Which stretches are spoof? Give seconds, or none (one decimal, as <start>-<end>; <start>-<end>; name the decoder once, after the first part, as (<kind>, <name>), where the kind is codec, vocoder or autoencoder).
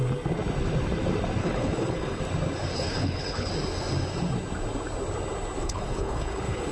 1.4-2.2 (codec, HILCodec); 2.7-3.5; 5.6-6.7